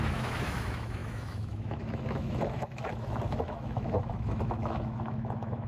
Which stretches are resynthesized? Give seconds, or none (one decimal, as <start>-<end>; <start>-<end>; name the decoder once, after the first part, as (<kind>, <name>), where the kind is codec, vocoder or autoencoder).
0.0-5.7 (autoencoder, DAC-VAE)